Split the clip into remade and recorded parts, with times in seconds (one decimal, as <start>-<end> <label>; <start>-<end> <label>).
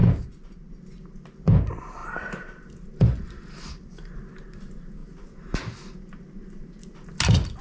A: 0.0-7.6 recorded